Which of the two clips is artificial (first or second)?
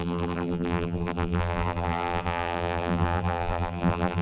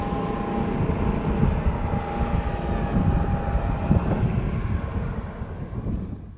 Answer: first